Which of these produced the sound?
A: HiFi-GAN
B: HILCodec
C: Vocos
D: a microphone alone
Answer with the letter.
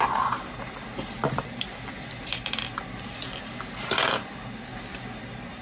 D